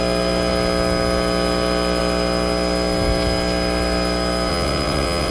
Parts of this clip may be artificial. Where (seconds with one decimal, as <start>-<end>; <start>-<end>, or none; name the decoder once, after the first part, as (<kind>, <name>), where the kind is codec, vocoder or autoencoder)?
4.5-5.3 (vocoder, WaveNeXt)